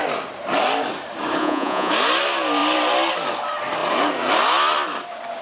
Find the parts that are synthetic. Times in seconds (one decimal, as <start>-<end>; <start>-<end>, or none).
1.4-1.9

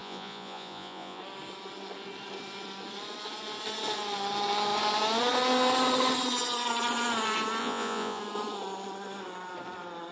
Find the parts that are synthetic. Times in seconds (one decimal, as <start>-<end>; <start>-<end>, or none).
0.0-1.2; 7.6-8.2

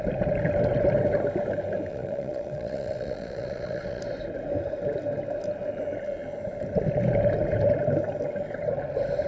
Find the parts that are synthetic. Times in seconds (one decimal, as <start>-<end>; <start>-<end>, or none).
1.9-4.0

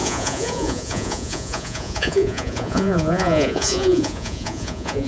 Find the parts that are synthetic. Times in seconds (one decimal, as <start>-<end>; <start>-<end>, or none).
0.0-5.1

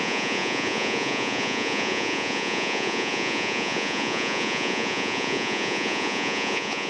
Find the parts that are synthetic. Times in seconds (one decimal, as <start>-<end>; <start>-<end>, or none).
0.0-6.9

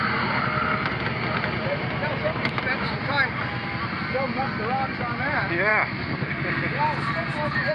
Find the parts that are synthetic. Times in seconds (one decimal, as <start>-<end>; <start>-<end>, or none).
none